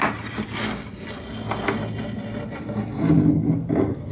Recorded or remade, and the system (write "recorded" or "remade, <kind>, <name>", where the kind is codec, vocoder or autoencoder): recorded